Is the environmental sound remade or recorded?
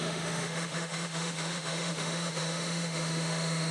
remade